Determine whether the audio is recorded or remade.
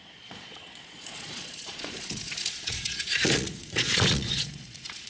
remade